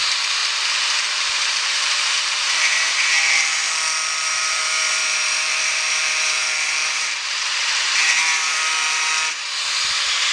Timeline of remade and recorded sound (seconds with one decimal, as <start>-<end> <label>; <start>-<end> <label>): 0.0-0.4 remade; 0.4-1.3 recorded; 1.3-3.6 remade; 3.6-4.2 recorded; 4.2-10.3 remade